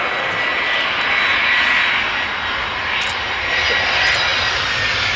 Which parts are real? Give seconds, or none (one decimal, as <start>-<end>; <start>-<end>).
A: 0.0-5.2